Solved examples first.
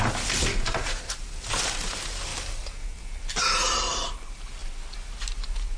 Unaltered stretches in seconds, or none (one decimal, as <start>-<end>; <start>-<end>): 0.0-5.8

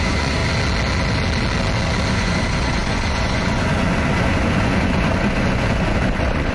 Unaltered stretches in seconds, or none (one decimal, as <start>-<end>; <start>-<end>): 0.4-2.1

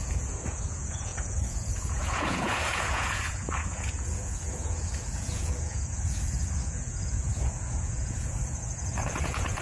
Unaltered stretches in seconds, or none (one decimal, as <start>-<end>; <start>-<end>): none

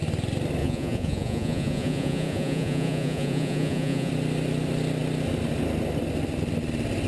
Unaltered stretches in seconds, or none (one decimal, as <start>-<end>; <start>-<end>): 0.0-0.6; 4.1-7.1

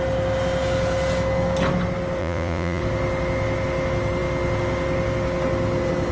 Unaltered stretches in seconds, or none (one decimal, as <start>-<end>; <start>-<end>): 0.0-2.2; 2.8-6.1

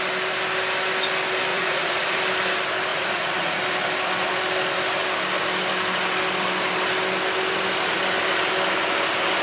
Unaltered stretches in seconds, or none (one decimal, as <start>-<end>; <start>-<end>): 0.0-1.5; 2.2-2.9; 3.6-9.4